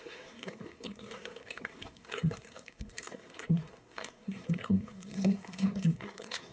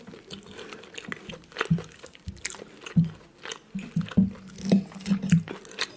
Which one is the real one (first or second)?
second